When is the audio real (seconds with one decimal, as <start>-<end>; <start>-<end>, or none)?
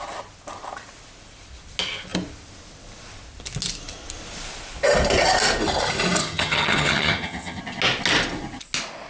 0.0-6.2; 7.6-9.1